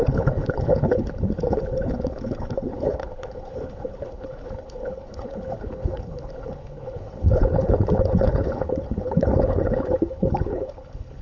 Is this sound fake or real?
fake